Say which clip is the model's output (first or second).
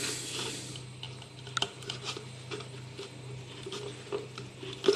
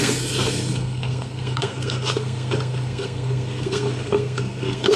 second